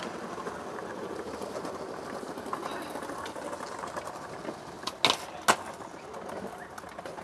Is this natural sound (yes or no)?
yes